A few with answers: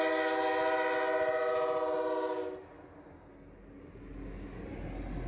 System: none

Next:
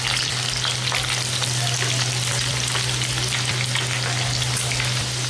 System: none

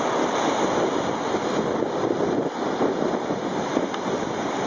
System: none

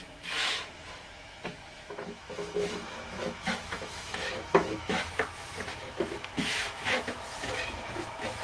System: autoencoder, DAC-VAE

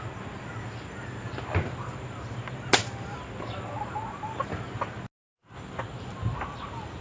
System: none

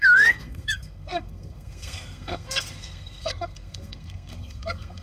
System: codec, SNAC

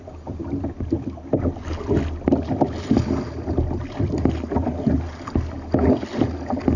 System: none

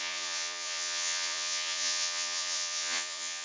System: vocoder, Vocos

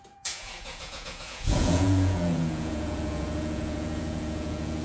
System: vocoder, Vocos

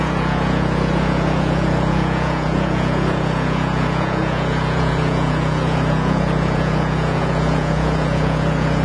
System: vocoder, Vocos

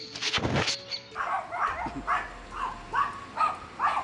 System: none